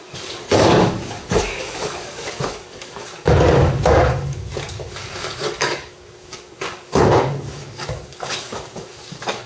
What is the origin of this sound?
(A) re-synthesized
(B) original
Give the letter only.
A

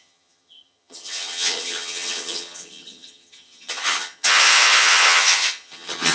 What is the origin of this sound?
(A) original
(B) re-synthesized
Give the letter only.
B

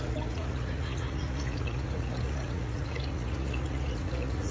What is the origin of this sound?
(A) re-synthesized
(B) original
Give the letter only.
A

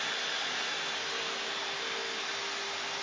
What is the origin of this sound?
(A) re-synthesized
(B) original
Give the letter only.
B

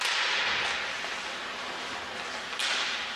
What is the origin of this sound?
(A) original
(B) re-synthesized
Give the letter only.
A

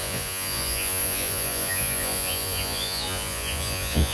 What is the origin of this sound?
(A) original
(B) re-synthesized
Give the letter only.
B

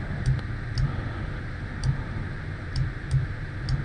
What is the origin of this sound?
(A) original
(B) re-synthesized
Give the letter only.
A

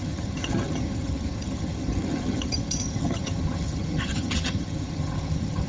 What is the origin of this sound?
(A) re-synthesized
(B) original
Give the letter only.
A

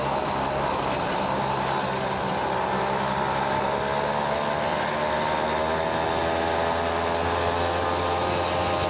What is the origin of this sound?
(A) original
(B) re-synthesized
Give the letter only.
A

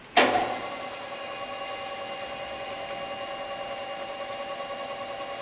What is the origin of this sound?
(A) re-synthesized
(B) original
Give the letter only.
B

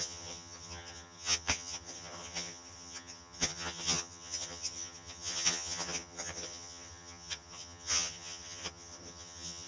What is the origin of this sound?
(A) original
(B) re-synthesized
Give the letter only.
B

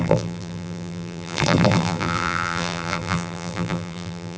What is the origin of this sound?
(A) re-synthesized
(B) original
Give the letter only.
A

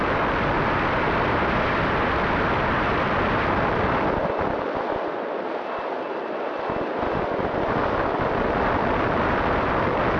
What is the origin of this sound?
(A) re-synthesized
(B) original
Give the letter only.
B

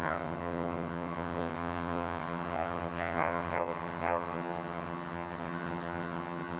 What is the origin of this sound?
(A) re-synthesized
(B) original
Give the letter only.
A